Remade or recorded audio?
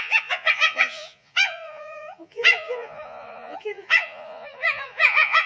remade